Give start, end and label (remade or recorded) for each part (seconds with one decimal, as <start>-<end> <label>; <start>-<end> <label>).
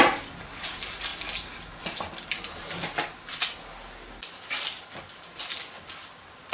0.0-6.5 recorded